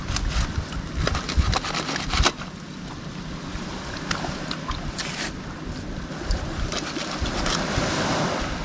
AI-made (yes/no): no